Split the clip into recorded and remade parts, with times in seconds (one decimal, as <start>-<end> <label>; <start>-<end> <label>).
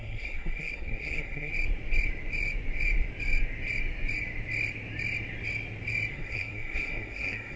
0.0-1.5 remade; 1.5-6.1 recorded; 6.1-7.6 remade